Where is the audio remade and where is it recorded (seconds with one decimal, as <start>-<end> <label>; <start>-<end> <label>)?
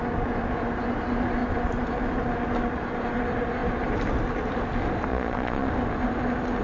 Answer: 0.0-5.1 recorded; 5.1-5.7 remade; 5.7-6.6 recorded